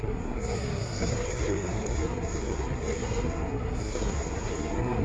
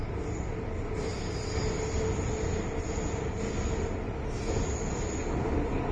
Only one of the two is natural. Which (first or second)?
second